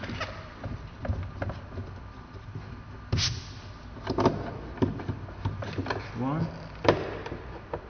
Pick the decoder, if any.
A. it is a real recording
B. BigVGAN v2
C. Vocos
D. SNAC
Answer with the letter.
A